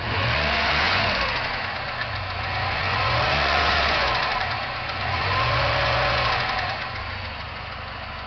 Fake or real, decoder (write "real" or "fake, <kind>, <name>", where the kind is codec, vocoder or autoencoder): fake, vocoder, Vocos